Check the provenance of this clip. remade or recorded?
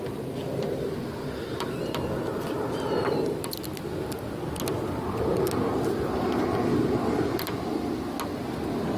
recorded